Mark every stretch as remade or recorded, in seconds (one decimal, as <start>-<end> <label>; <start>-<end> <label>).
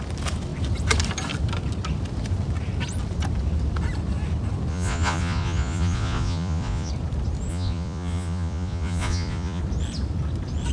0.0-4.7 recorded; 4.7-6.9 remade; 6.9-7.5 recorded; 7.5-9.6 remade; 9.6-10.7 recorded